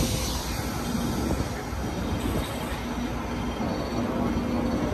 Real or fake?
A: real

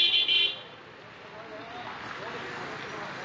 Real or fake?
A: real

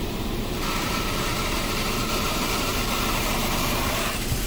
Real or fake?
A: fake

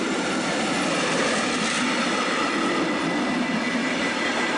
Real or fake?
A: real